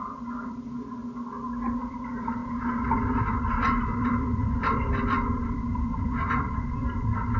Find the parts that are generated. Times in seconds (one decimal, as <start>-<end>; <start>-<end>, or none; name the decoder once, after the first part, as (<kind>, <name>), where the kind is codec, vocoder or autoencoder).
0.0-1.0 (vocoder, BigVGAN v2); 1.8-2.4; 3.3-7.4